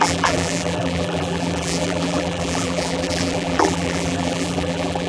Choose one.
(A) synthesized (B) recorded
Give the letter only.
A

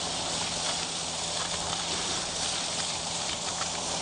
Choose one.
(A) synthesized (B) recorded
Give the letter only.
A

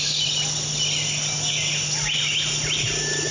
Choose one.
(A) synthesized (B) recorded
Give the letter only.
B